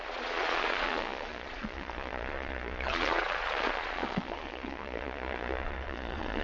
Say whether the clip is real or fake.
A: fake